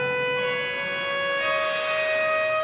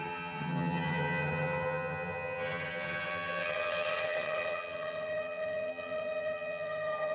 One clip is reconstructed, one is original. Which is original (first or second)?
first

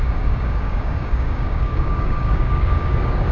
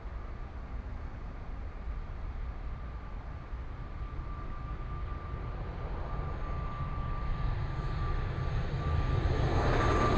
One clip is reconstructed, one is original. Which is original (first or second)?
second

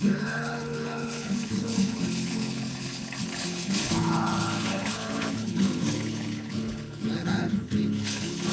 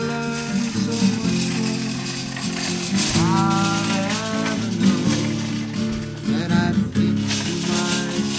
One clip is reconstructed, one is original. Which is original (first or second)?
second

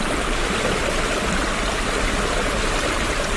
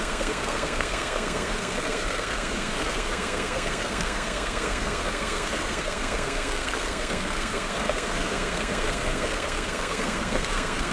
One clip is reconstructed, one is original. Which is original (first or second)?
first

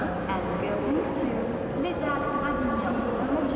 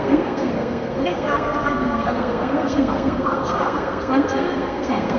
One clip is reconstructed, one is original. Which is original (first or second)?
first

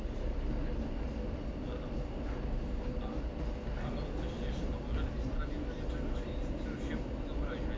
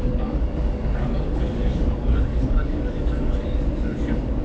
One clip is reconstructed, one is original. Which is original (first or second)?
first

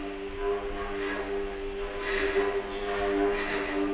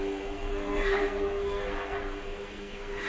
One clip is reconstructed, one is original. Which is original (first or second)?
first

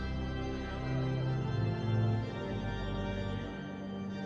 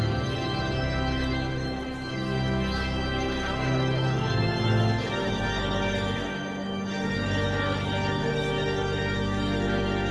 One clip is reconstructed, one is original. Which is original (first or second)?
first